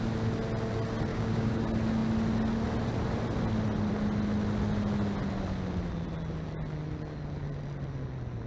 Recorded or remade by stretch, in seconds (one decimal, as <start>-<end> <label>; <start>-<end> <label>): 0.0-1.1 recorded; 1.1-1.6 remade; 1.6-8.5 recorded